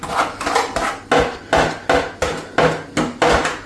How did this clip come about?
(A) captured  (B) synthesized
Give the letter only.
A